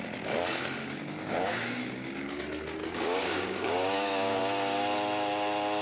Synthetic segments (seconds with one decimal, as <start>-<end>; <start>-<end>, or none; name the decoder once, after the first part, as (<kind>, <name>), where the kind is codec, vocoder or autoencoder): 0.8-2.4 (codec, DAC); 2.8-4.4